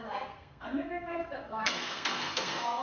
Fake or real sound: fake